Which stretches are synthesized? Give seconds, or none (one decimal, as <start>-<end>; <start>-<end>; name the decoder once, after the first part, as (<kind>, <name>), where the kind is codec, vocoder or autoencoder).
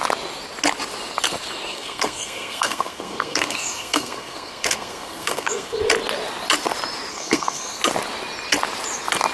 1.7-5.8 (codec, SNAC); 7.1-7.8